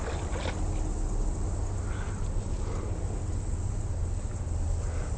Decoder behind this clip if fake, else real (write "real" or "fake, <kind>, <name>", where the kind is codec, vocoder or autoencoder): real